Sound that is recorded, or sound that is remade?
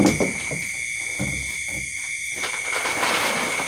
recorded